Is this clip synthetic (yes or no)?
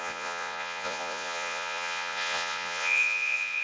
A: yes